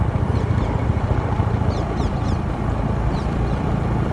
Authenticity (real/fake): real